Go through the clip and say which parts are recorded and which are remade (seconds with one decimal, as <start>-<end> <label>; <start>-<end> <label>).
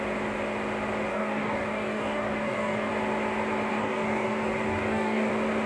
0.0-1.1 recorded; 1.1-2.9 remade; 2.9-3.7 recorded; 3.7-5.3 remade; 5.3-5.7 recorded